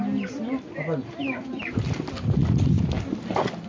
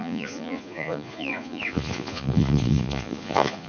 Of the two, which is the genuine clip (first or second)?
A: first